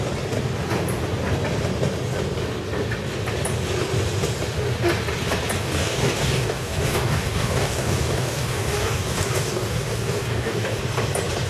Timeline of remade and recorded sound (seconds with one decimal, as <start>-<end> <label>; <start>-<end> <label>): 0.0-5.6 recorded; 5.6-10.8 remade; 10.8-11.5 recorded